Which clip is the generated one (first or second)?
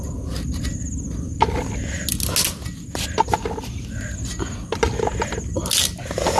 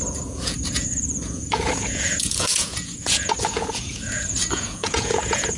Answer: second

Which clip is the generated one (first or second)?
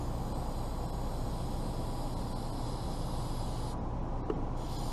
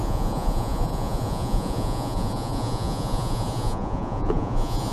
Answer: second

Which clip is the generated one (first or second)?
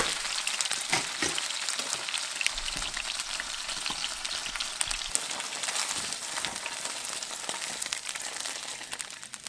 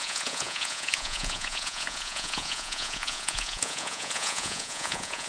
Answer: second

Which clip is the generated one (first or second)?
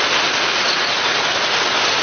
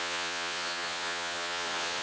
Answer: second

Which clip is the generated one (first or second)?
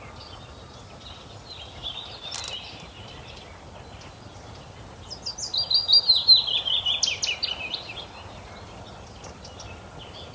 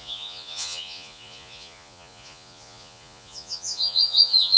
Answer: second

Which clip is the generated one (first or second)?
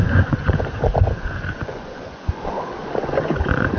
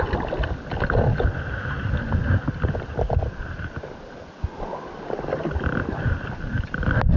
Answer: first